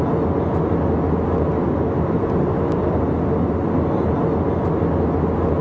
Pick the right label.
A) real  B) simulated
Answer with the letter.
A